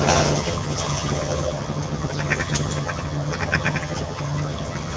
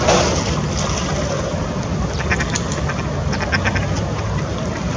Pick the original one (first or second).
second